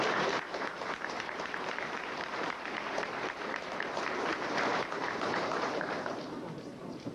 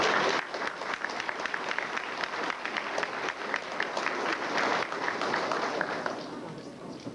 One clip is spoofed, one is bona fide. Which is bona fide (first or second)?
second